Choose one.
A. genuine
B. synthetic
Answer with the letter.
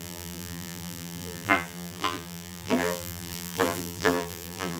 B